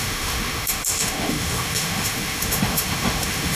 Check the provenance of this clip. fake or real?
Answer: fake